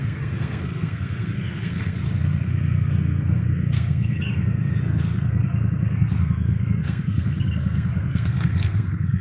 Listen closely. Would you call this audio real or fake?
fake